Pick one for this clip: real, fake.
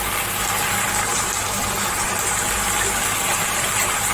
real